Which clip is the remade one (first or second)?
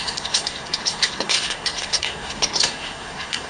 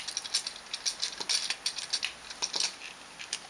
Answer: first